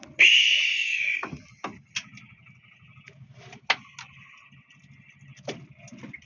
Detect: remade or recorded recorded